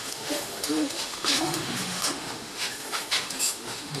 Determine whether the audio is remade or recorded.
remade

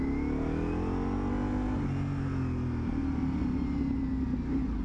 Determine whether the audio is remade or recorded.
recorded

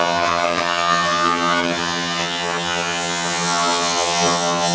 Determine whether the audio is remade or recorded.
remade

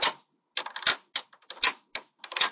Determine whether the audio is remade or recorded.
recorded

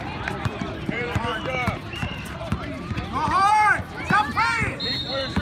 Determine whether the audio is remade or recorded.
remade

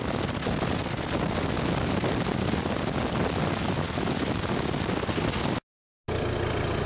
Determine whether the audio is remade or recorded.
recorded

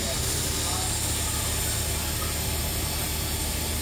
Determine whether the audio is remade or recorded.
recorded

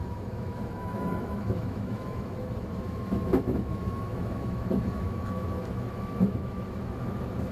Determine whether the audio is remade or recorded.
remade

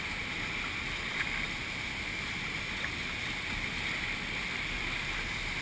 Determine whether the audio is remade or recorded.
recorded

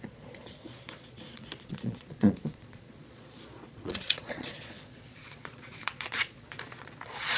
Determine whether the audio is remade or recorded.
remade